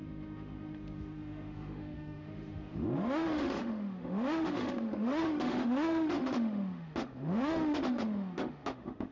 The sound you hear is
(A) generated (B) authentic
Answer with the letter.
A